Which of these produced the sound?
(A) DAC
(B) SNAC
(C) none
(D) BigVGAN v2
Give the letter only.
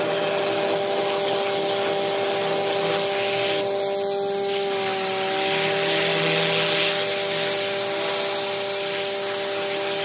C